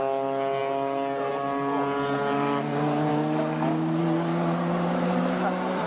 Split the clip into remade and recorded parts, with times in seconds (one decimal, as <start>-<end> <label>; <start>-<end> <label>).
0.0-3.1 recorded; 3.1-4.0 remade; 4.0-5.9 recorded